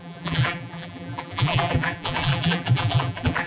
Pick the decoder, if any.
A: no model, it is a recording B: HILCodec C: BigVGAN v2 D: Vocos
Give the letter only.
C